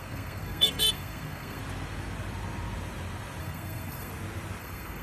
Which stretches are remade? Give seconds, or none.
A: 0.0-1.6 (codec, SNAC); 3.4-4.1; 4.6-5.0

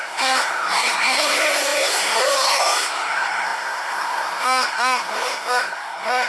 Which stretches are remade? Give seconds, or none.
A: 0.0-6.3 (codec, SNAC)

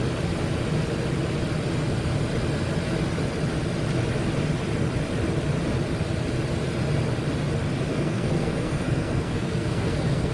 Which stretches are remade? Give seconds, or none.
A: 7.9-10.3 (codec, SNAC)

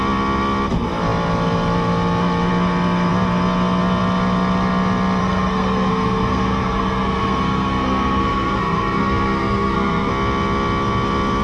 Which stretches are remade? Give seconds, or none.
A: 5.2-10.1 (codec, SNAC)